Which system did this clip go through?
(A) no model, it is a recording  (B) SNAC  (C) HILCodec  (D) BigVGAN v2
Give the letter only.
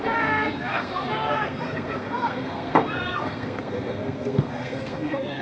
B